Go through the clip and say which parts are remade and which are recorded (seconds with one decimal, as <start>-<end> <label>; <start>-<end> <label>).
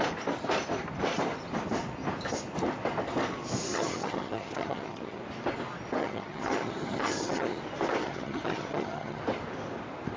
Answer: 0.0-3.7 recorded; 3.7-5.2 remade; 5.2-6.0 recorded; 6.0-7.6 remade; 7.6-8.0 recorded; 8.0-9.2 remade; 9.2-10.2 recorded